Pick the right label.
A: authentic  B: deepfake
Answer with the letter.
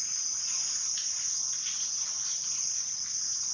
A